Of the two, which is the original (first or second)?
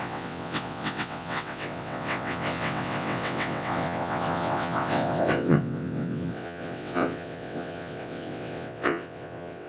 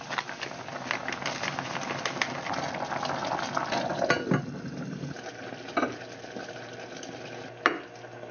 second